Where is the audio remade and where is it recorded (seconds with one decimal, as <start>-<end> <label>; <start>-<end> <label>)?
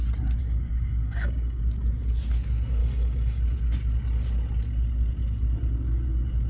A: 0.0-0.4 recorded; 0.4-1.6 remade; 1.6-2.8 recorded; 2.8-3.4 remade; 3.4-6.5 recorded